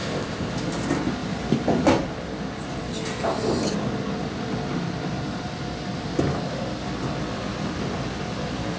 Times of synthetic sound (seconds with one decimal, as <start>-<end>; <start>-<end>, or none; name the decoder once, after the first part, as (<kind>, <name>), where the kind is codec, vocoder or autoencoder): 0.0-0.5 (codec, ZipCodec)